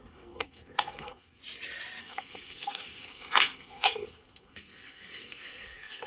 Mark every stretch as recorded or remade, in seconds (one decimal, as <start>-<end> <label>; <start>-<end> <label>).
0.0-1.4 remade; 1.4-2.0 recorded; 2.0-6.1 remade